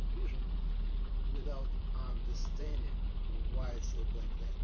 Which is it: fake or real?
fake